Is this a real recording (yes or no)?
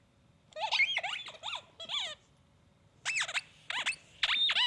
yes